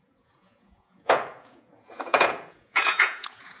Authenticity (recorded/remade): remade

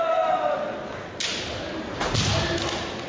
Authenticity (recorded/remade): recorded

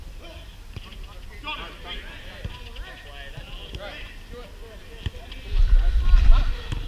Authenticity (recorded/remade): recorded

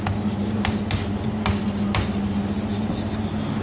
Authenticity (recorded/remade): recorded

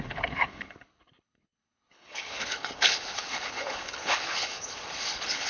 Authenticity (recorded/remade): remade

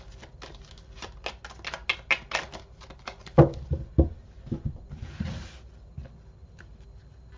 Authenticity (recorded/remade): recorded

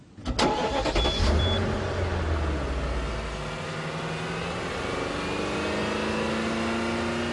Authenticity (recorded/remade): recorded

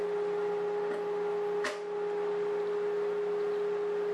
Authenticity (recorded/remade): recorded